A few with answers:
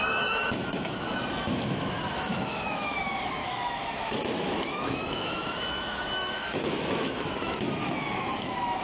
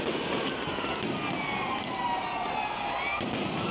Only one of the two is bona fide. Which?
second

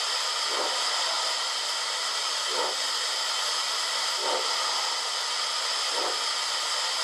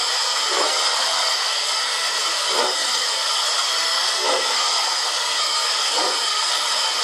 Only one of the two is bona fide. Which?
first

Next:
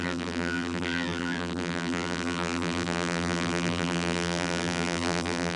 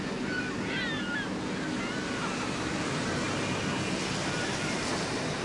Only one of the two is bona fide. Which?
second